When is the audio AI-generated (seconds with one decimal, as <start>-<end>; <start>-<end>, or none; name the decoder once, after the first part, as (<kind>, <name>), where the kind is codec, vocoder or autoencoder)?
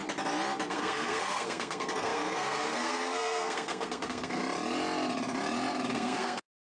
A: 0.7-4.4 (codec, SNAC); 5.9-6.6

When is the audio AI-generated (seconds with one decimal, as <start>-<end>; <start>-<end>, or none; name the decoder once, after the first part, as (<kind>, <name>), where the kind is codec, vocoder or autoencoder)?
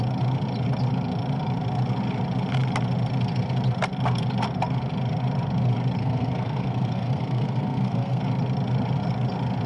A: 6.0-8.2 (codec, SNAC)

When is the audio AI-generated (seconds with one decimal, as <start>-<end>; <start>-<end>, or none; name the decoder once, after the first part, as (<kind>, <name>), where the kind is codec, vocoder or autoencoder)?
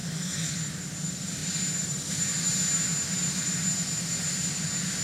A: 0.0-0.5 (codec, SNAC)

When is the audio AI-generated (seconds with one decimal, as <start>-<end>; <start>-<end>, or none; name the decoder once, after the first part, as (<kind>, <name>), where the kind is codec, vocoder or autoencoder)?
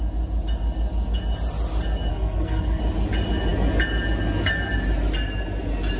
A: 2.1-2.8 (codec, SNAC)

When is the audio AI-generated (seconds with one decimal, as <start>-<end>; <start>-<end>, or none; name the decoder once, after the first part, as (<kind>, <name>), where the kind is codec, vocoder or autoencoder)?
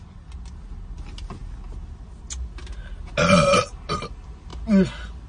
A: none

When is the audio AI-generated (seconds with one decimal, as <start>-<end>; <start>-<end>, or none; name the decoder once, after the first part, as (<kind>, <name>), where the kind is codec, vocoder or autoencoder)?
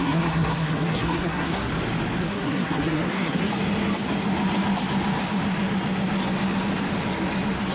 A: 0.0-1.7 (codec, SNAC); 2.2-3.5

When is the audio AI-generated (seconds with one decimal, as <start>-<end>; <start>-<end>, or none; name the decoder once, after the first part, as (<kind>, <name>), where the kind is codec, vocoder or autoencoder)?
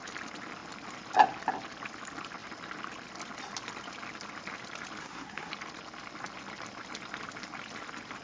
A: 5.0-5.5 (codec, SNAC)